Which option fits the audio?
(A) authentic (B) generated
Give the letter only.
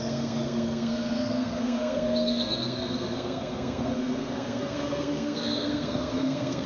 B